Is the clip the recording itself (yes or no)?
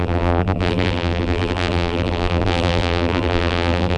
no